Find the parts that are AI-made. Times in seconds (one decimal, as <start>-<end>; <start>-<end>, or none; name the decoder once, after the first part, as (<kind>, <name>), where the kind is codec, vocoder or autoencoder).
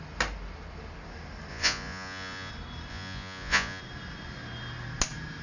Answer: 1.5-2.5 (vocoder, Vocos); 2.9-3.8